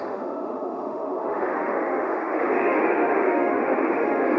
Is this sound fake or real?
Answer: fake